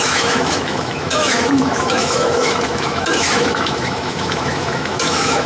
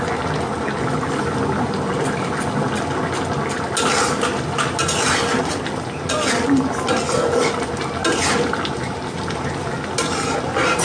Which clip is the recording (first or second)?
second